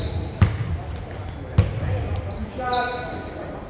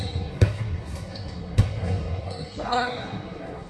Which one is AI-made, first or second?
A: second